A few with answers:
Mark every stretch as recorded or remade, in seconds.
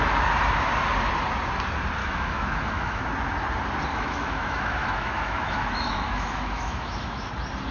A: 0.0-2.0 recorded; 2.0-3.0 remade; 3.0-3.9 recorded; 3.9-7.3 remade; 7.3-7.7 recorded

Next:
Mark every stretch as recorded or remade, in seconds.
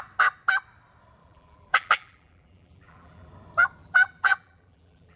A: 0.0-1.2 recorded; 1.2-3.3 remade; 3.3-3.8 recorded; 3.8-5.2 remade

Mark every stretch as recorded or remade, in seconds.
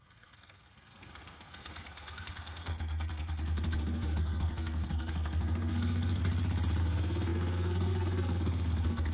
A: 0.0-6.2 remade; 6.2-6.8 recorded; 6.8-9.1 remade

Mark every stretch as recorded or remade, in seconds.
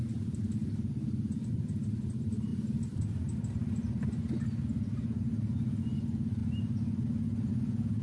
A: 0.0-8.0 recorded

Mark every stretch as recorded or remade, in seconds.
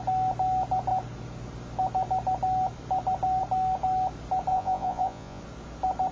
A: 0.0-4.5 recorded; 4.5-5.4 remade; 5.4-6.1 recorded